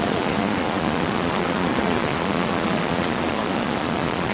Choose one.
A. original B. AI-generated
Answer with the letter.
B